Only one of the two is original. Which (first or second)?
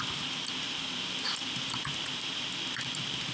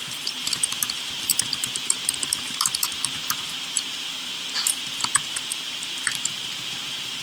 first